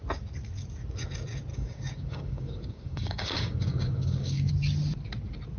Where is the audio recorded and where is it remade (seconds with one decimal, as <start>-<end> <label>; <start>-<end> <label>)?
0.0-1.5 recorded; 1.5-4.5 remade; 4.5-5.6 recorded